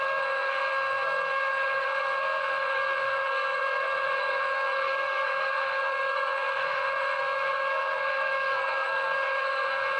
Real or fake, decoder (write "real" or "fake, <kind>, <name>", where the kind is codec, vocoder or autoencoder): fake, codec, SNAC